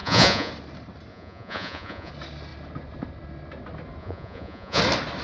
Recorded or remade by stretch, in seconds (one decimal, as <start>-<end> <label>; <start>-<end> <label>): 0.0-0.5 remade; 0.5-1.1 recorded; 1.1-2.1 remade; 2.1-4.0 recorded; 4.0-4.8 remade; 4.8-5.2 recorded

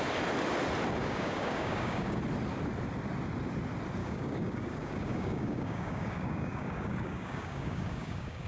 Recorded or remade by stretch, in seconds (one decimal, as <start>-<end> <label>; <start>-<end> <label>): 0.0-1.0 recorded; 1.0-2.2 remade; 2.2-4.0 recorded; 4.0-8.5 remade

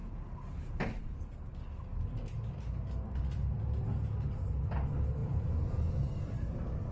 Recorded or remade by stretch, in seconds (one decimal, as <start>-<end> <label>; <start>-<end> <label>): 0.0-0.8 remade; 0.8-5.2 recorded; 5.2-5.9 remade; 5.9-6.9 recorded

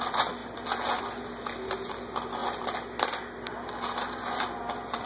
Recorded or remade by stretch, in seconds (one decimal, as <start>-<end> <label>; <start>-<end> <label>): 0.0-5.1 recorded

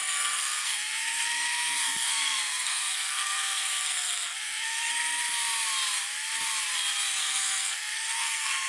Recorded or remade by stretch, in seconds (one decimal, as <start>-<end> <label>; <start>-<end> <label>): 0.0-5.2 remade; 5.2-7.2 recorded; 7.2-8.7 remade

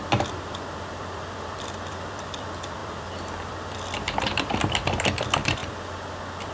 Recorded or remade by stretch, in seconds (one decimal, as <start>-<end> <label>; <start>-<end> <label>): 0.0-5.6 remade; 5.6-6.5 recorded

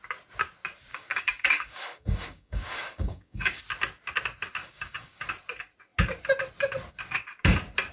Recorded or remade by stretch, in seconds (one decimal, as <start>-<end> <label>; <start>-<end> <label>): 0.0-0.9 recorded; 0.9-3.6 remade; 3.6-4.6 recorded; 4.6-5.3 remade; 5.3-7.9 recorded

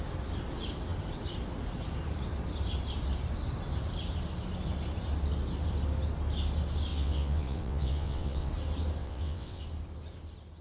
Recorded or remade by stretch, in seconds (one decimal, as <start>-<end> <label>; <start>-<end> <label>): 0.0-6.9 recorded; 6.9-8.5 remade; 8.5-9.0 recorded; 9.0-9.6 remade; 9.6-10.6 recorded